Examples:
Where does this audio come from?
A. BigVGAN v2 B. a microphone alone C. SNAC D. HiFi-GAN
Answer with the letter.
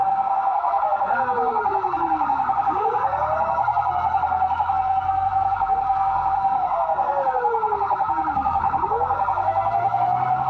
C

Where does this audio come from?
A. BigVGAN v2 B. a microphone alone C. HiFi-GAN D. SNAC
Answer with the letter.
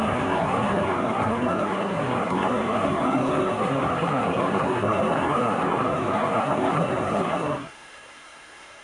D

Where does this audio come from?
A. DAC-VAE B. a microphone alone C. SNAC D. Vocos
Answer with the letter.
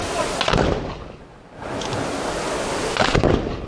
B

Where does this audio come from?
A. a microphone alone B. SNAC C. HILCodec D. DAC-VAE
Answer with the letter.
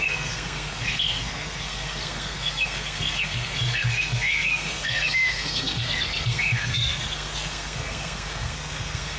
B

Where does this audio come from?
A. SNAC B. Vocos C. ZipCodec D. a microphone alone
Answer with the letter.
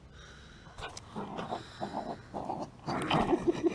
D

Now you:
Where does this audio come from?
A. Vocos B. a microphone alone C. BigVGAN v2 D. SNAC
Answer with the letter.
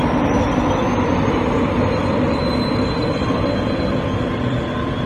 B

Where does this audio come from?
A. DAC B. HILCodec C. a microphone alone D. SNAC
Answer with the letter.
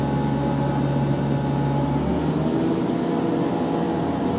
C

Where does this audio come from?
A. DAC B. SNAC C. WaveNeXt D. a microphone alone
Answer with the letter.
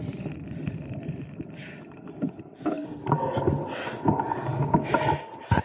D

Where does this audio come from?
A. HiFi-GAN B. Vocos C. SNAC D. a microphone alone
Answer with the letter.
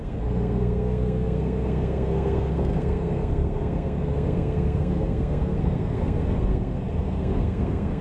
C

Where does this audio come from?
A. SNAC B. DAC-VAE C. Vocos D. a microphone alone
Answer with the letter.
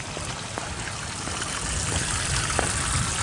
D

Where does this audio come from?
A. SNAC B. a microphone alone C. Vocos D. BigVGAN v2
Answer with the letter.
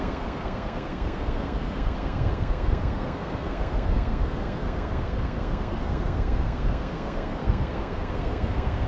A